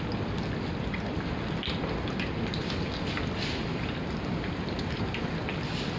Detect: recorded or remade recorded